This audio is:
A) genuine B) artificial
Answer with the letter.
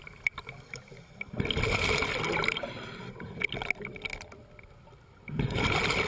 A